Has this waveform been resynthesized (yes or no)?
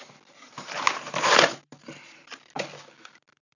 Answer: no